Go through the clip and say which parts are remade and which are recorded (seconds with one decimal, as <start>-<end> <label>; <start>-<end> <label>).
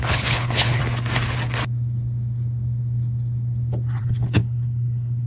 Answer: 0.0-0.8 remade; 0.8-4.0 recorded; 4.0-5.3 remade